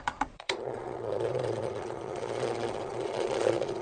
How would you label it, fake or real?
fake